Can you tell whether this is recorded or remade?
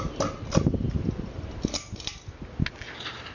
recorded